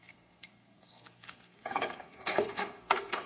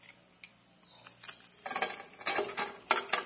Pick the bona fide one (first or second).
second